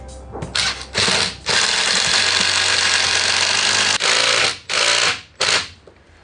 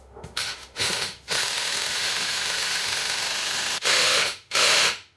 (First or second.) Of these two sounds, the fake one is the second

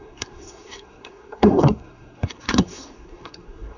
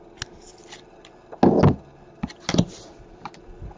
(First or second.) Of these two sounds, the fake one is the first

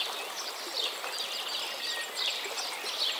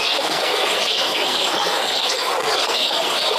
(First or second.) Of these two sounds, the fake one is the second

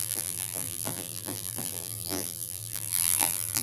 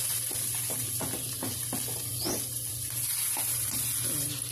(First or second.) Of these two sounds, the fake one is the first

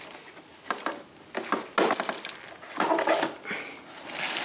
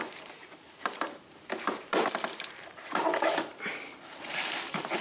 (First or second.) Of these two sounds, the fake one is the second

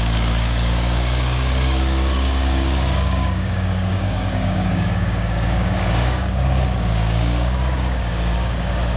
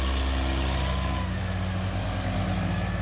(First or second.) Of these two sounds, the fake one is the first